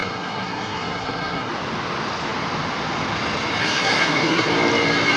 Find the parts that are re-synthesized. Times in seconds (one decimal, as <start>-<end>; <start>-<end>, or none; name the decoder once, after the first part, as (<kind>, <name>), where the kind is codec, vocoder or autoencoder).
0.0-1.5 (codec, SNAC); 3.6-4.5